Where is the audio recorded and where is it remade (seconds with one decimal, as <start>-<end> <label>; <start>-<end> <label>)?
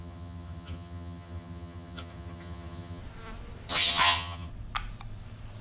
0.0-3.0 remade; 3.0-3.7 recorded; 3.7-4.5 remade; 4.5-5.6 recorded